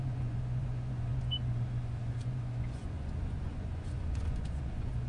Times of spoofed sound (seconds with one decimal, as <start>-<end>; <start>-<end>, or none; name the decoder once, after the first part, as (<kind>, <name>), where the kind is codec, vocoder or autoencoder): 0.0-5.1 (vocoder, Vocos)